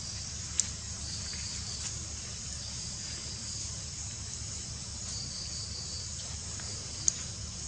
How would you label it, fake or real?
real